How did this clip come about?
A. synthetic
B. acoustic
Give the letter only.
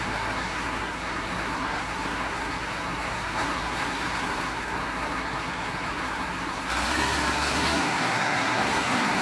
A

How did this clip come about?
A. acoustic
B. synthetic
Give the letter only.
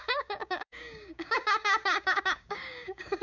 B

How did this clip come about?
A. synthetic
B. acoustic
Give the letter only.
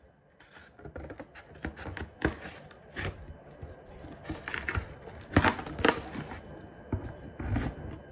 B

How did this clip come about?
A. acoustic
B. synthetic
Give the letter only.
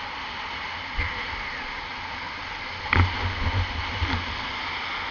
A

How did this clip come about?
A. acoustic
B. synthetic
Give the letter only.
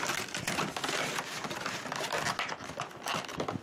A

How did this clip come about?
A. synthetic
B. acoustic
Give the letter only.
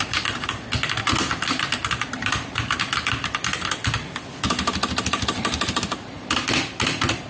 B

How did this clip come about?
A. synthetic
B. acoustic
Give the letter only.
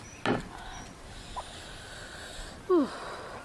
B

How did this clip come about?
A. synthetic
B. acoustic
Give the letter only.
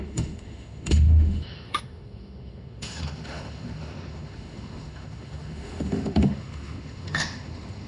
A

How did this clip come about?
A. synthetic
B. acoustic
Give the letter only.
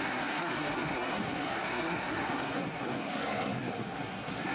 A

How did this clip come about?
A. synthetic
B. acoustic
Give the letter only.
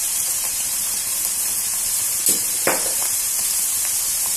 A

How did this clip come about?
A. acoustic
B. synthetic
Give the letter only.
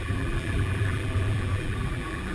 B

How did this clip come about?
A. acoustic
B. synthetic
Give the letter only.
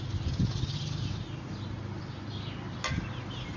A